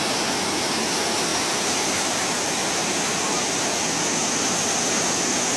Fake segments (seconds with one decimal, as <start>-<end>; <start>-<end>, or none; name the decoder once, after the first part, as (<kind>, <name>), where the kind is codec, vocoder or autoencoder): 1.3-4.7 (vocoder, BigVGAN v2)